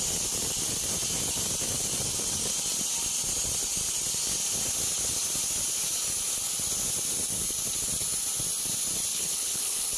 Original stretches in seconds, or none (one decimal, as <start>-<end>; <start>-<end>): 0.0-9.1